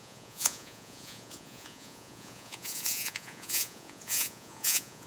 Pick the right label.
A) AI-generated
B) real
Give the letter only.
A